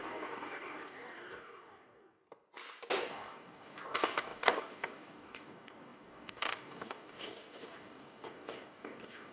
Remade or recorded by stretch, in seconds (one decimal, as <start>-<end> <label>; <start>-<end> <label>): 0.0-2.2 remade; 2.2-3.0 recorded; 3.0-9.3 remade